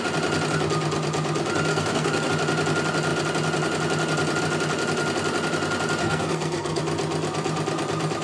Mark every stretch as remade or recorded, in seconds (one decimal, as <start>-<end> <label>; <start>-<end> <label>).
0.0-1.7 recorded; 1.7-2.3 remade; 2.3-6.0 recorded; 6.0-6.8 remade; 6.8-8.2 recorded